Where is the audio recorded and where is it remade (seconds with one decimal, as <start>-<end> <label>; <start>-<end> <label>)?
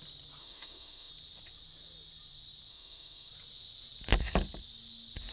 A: 0.0-0.4 recorded; 0.4-1.1 remade; 1.1-2.7 recorded; 2.7-3.3 remade; 3.3-5.3 recorded